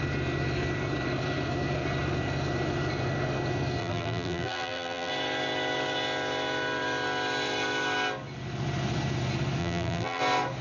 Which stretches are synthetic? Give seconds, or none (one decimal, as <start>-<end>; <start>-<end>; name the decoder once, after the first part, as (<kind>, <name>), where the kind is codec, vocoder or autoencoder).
3.8-5.1 (vocoder, BigVGAN v2); 9.6-10.2